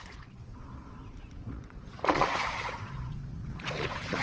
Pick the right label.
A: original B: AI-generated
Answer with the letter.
B